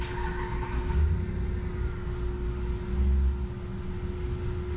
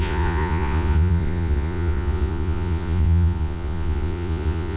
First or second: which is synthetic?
second